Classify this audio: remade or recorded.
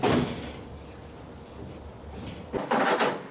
recorded